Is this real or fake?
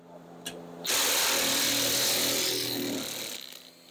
real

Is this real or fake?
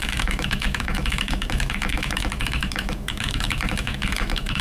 fake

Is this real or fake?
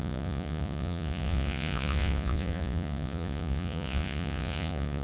fake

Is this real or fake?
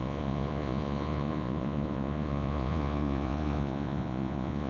fake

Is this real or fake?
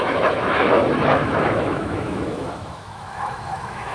fake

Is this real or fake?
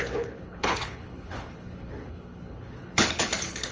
fake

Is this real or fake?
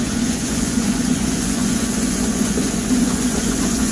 fake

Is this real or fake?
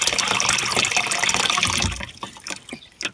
real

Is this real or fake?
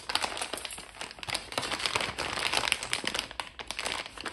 real